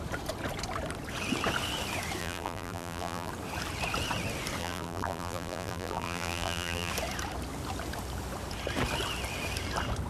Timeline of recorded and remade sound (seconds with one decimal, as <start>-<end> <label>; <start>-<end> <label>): 0.0-2.2 recorded; 2.2-3.3 remade; 3.3-4.6 recorded; 4.6-6.9 remade; 6.9-10.1 recorded